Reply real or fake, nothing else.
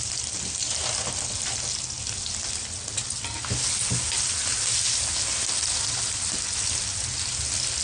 real